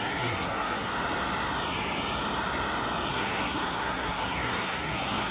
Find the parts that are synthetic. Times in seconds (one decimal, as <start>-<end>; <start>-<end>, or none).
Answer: 0.0-0.9; 3.1-5.3